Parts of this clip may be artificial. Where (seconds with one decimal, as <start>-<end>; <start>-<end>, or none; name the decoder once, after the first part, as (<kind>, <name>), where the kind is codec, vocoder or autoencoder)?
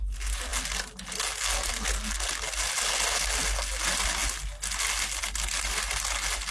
none